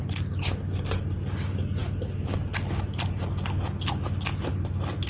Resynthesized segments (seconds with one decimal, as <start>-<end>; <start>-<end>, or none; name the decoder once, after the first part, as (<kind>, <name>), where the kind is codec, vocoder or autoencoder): none